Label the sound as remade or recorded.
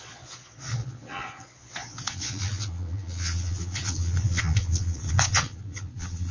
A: remade